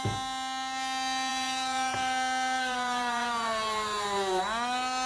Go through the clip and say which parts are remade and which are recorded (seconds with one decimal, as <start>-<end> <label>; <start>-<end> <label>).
0.0-1.3 recorded; 1.3-4.4 remade; 4.4-5.1 recorded